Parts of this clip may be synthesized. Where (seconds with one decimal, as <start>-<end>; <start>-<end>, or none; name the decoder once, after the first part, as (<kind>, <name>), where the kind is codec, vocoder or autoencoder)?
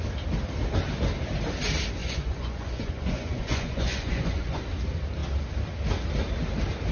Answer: 2.0-4.6 (vocoder, Vocos)